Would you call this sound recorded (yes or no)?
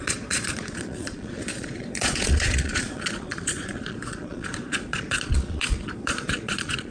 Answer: no